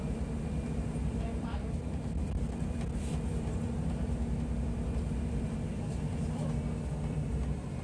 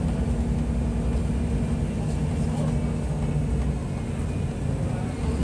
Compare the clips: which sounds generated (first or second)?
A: first